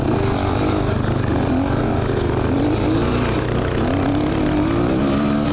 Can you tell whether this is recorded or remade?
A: recorded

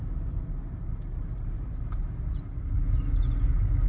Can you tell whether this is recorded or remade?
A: recorded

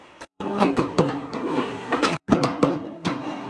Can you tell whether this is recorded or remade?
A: remade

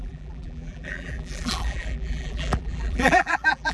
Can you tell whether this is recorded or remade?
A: remade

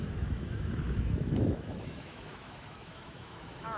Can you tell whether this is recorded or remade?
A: remade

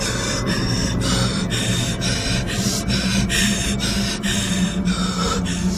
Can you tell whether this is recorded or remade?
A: recorded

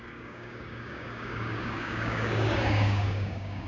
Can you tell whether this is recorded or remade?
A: remade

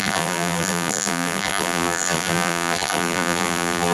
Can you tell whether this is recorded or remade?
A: remade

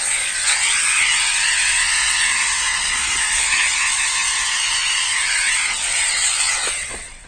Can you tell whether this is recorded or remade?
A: remade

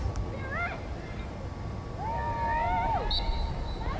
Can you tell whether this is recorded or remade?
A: recorded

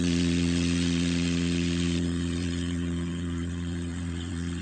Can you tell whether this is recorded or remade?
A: remade